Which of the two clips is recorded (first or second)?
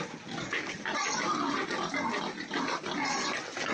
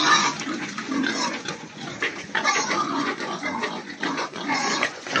first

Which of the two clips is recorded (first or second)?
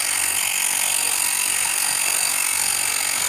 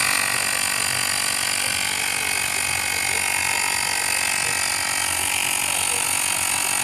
second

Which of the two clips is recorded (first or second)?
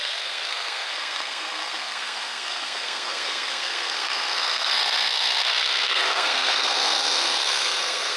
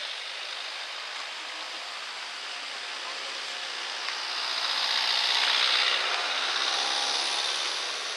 second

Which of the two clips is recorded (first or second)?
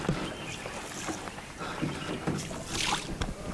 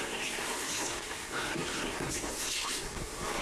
first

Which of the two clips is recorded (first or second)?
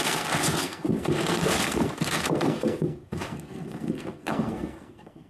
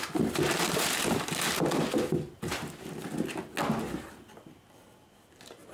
second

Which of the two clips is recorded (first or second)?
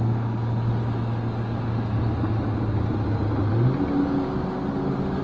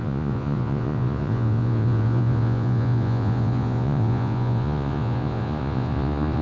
first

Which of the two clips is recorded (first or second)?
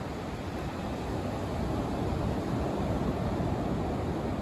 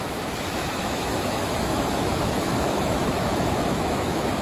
first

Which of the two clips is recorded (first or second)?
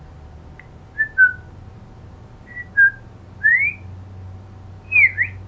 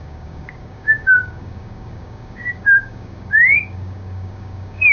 first